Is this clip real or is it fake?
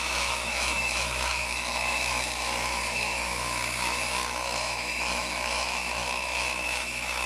fake